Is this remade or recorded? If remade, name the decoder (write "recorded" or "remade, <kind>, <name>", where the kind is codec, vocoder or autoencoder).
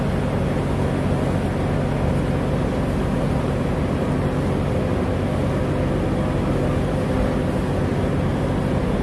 recorded